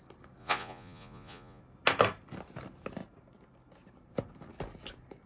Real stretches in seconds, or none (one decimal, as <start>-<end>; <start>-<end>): 0.0-0.4; 1.6-5.3